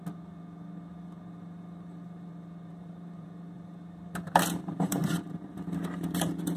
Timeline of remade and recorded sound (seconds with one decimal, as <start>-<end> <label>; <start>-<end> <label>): 0.0-0.9 recorded; 0.9-2.3 remade; 2.3-2.7 recorded; 2.7-6.6 remade